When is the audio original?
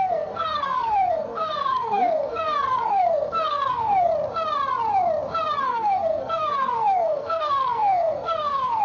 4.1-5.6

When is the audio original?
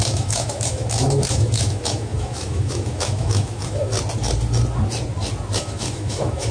3.9-5.6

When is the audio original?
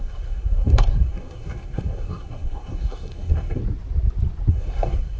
3.6-4.5